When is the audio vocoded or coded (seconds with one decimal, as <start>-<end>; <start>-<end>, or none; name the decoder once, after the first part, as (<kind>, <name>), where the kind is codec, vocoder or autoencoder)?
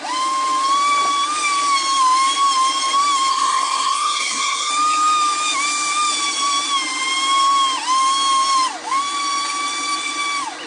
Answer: 3.3-4.7 (codec, SNAC)